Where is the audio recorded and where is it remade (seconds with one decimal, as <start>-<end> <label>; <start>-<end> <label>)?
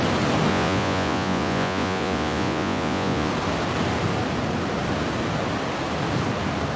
0.0-0.5 recorded; 0.5-3.3 remade; 3.3-6.8 recorded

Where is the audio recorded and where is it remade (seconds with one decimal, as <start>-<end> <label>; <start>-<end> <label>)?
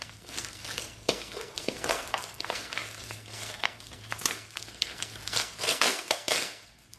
0.0-7.0 remade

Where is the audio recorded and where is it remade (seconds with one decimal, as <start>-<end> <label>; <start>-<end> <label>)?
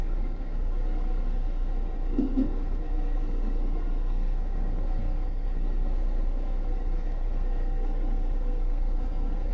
0.0-9.5 remade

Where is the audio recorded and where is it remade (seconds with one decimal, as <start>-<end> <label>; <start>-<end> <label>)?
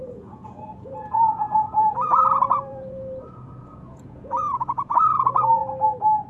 0.0-5.6 remade; 5.6-6.3 recorded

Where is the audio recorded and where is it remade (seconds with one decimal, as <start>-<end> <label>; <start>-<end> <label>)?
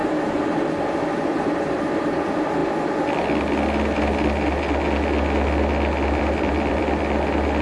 0.0-2.6 remade; 2.6-6.2 recorded; 6.2-7.6 remade